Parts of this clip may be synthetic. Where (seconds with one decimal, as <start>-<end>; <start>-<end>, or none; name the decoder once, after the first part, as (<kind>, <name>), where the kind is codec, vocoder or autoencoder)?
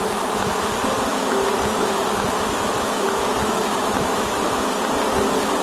1.1-4.5 (autoencoder, DAC-VAE)